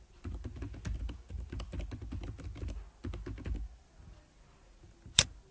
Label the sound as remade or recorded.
recorded